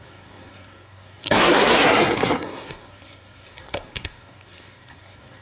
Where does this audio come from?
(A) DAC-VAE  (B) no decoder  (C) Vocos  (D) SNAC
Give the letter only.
D